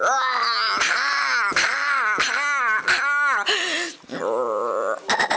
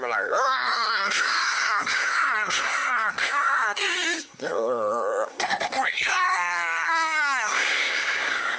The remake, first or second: second